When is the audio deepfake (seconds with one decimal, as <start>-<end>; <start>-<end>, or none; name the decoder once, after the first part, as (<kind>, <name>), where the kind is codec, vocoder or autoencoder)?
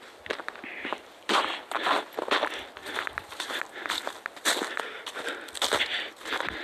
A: 0.9-2.0 (vocoder, BigVGAN v2); 2.8-3.6